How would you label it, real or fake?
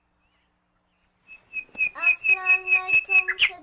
real